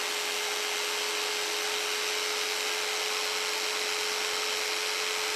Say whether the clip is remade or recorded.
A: recorded